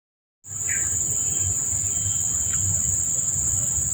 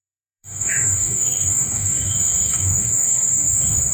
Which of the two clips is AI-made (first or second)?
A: second